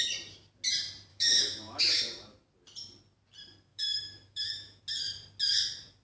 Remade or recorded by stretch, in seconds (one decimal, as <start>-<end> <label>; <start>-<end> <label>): 0.0-1.1 recorded; 1.1-1.8 remade; 1.8-3.7 recorded; 3.7-4.8 remade; 4.8-6.0 recorded